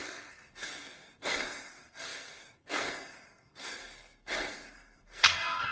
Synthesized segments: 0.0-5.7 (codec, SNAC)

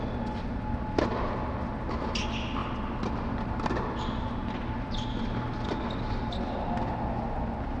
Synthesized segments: none

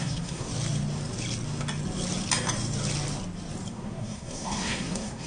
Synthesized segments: 0.0-0.5 (codec, SNAC); 3.7-5.3

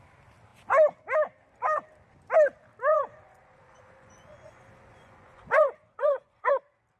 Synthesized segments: 2.9-6.5 (vocoder, Vocos)

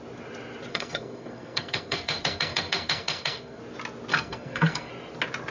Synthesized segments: 0.7-3.6 (codec, SNAC); 4.1-4.9

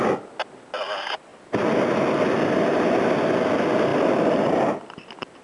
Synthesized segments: 1.3-2.8 (vocoder, BigVGAN v2); 3.9-4.5